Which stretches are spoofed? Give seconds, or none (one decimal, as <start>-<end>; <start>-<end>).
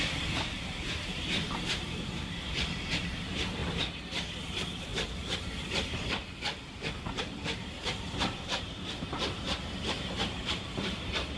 0.0-3.6; 4.4-4.9; 7.2-11.4